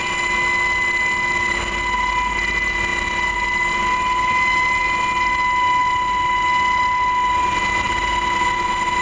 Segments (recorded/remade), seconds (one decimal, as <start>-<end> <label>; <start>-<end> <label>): 0.0-9.0 recorded